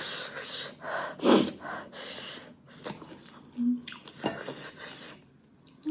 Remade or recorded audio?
recorded